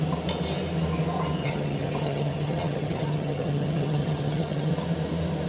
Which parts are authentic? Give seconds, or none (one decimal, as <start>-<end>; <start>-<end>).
0.0-1.4; 4.7-5.5